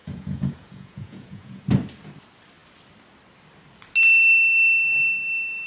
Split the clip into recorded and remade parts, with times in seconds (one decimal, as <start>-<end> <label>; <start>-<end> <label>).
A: 0.0-1.6 remade; 1.6-5.7 recorded